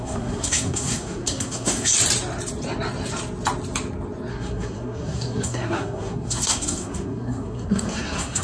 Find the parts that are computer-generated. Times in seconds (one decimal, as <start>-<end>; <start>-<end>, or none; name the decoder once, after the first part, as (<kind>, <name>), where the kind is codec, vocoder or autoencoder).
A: 0.0-1.9 (codec, SNAC); 4.3-8.4